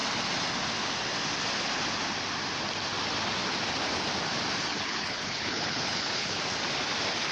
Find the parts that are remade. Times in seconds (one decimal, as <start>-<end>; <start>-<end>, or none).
4.7-6.4